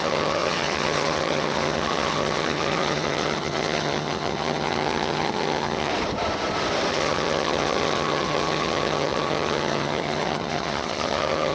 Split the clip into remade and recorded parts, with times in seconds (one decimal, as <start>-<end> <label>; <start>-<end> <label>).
0.0-5.9 remade; 5.9-6.9 recorded; 6.9-11.5 remade